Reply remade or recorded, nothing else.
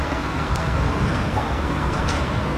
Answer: remade